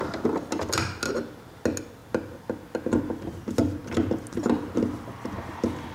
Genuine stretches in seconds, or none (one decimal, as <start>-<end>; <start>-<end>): 0.0-5.9